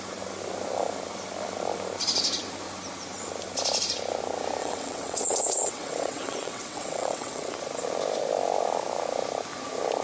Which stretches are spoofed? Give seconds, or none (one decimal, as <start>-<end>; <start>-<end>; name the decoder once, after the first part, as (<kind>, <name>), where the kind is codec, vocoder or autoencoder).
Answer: 4.6-7.5 (vocoder, WaveNeXt)